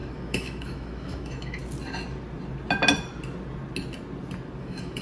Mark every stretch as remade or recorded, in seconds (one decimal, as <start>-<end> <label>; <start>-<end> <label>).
0.0-1.6 remade; 1.6-4.6 recorded; 4.6-5.0 remade